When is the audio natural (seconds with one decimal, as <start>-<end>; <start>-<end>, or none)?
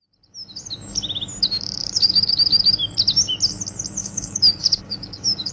0.0-1.8; 2.3-4.0